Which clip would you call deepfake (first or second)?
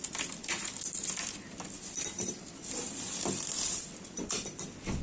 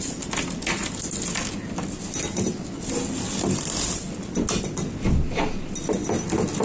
first